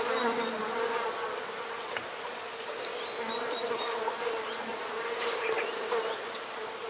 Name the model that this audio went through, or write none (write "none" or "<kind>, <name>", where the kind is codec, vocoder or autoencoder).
none